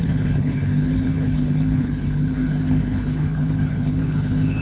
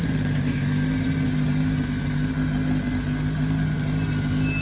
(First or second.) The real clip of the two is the second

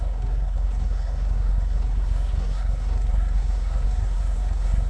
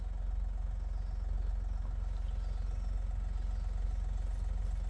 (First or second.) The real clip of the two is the second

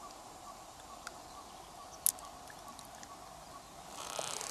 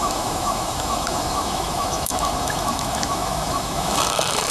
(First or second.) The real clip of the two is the first